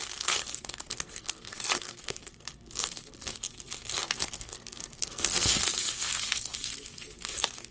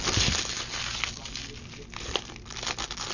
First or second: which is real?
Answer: second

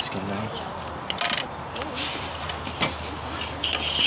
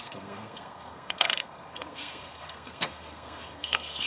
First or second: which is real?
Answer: first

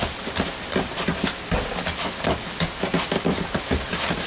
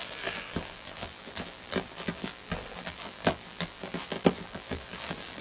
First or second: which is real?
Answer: first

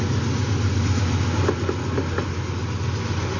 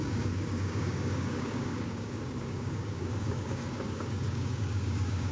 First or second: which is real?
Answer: first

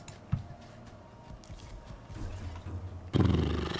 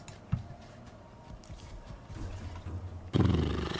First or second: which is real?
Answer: first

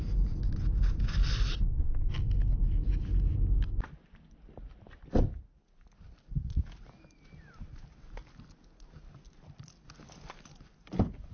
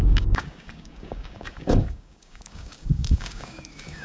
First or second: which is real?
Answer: first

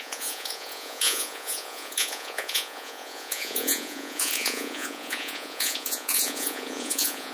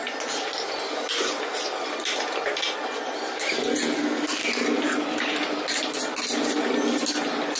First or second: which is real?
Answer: second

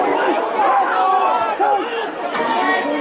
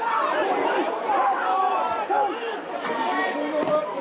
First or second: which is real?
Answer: first